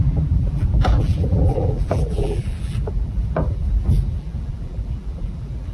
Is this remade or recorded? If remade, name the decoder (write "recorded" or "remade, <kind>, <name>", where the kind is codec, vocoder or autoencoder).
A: remade, vocoder, BigVGAN v2